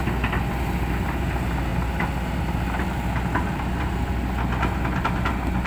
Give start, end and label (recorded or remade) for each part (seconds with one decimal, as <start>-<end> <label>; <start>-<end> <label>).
0.0-5.7 recorded